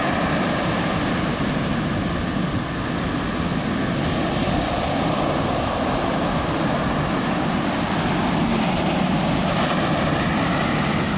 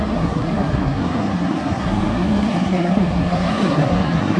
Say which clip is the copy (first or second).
second